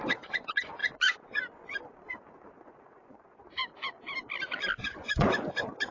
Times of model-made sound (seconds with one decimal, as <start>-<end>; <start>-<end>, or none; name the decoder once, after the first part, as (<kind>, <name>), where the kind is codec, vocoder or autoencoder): 0.0-3.6 (vocoder, Vocos); 4.8-5.9